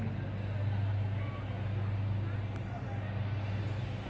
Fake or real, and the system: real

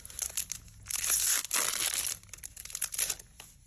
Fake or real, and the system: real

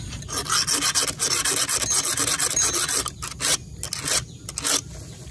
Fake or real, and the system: real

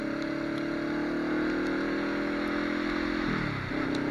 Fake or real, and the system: real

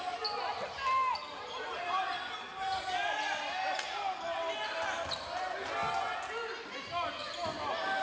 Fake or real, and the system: real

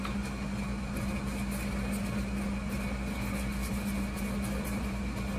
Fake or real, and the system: real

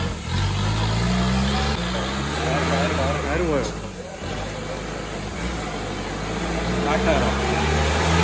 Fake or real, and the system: real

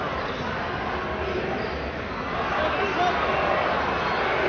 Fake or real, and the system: real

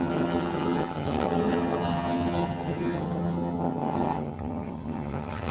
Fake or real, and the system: fake, vocoder, HiFi-GAN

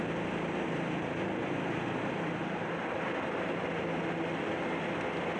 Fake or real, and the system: real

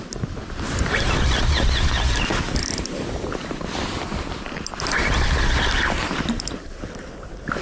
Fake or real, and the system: fake, vocoder, BigVGAN v2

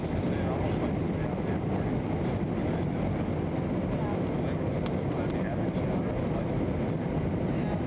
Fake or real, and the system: real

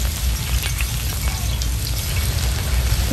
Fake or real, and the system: real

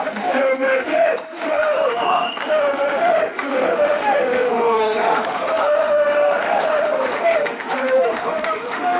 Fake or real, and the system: fake, autoencoder, DAC-VAE